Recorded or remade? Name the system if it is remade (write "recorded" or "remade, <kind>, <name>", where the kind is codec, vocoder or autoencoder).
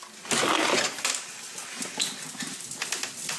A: recorded